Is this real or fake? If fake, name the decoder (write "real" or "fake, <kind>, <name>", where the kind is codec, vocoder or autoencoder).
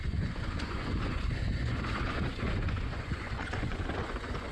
fake, vocoder, Vocos